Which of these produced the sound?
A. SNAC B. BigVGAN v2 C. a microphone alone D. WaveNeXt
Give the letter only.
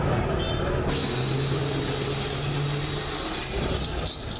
C